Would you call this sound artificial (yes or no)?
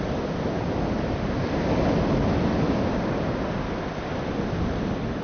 no